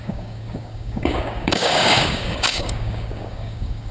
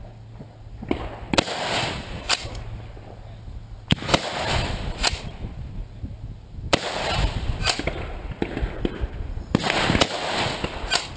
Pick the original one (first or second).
second